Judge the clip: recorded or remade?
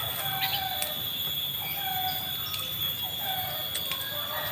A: recorded